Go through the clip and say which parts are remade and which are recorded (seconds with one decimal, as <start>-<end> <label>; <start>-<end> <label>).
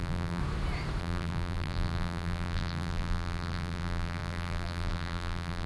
0.0-0.4 remade; 0.4-1.0 recorded; 1.0-5.7 remade